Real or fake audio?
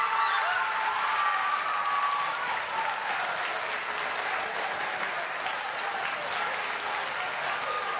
real